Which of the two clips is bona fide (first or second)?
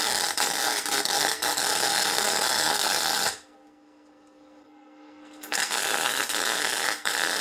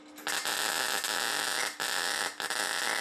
second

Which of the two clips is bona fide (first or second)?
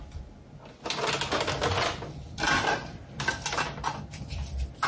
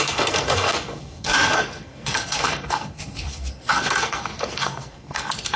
first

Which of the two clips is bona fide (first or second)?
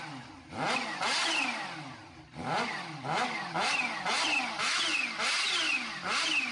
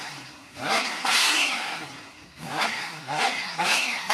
first